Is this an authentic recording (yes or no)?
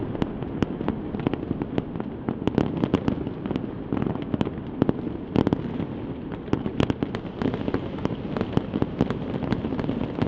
yes